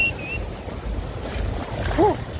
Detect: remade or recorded recorded